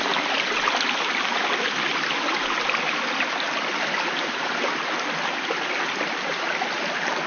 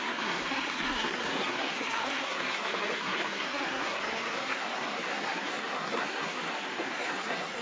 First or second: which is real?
first